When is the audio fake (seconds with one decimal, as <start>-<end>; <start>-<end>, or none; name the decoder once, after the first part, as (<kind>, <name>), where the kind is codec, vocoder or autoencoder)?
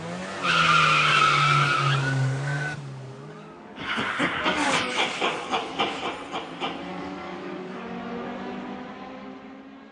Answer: 1.1-5.8 (codec, DAC); 6.9-8.0